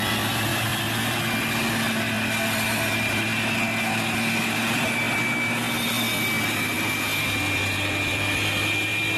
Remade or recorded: recorded